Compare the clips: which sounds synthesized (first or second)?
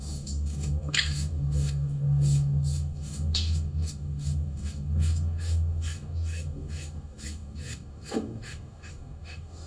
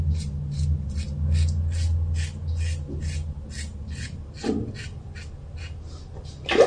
first